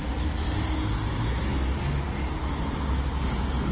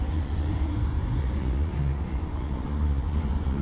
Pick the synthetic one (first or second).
second